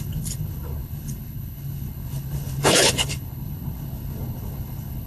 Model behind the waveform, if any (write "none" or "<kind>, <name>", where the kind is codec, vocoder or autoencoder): codec, HILCodec